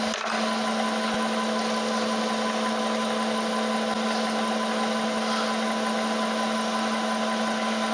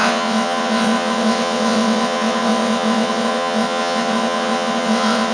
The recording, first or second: first